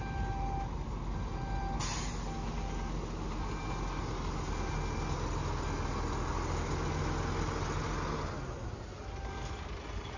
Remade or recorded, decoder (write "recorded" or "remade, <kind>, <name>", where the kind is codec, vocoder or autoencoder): recorded